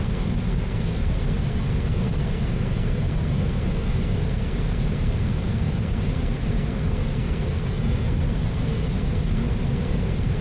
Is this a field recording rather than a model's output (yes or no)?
no